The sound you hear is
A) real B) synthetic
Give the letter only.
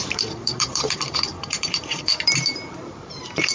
B